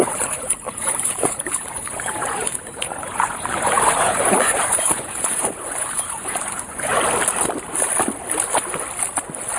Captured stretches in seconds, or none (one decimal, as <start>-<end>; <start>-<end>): 6.9-9.6